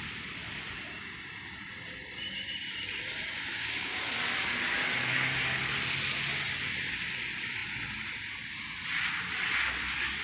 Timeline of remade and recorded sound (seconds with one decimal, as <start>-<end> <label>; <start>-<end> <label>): 0.0-3.5 recorded; 3.5-4.1 remade; 4.1-10.2 recorded